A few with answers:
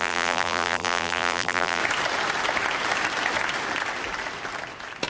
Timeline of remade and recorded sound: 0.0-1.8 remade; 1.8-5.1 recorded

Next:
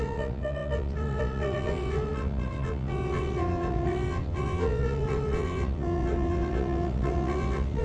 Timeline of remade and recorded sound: 0.0-7.8 remade

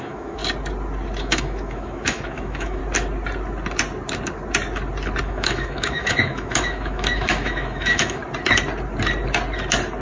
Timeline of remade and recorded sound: 0.0-0.4 remade; 0.4-1.2 recorded; 1.2-2.8 remade; 2.8-5.2 recorded; 5.2-8.2 remade; 8.2-10.0 recorded

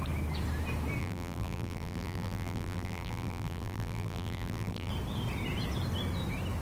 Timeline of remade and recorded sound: 0.0-1.0 recorded; 1.0-4.9 remade; 4.9-6.6 recorded

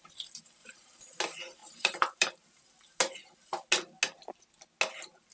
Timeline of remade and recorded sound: 0.0-0.6 recorded; 0.6-1.2 remade; 1.2-1.6 recorded; 1.6-2.6 remade; 2.6-5.3 recorded

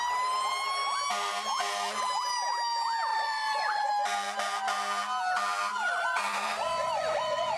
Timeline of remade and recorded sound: 0.0-3.1 recorded; 3.1-3.9 remade; 3.9-5.7 recorded; 5.7-7.6 remade

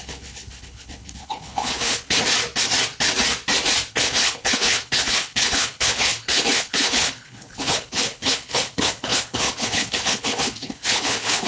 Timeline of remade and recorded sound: 0.0-2.2 remade; 2.2-3.9 recorded; 3.9-11.5 remade